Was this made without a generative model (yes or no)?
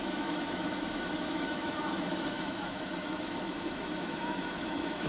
no